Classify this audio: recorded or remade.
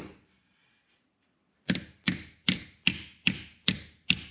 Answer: recorded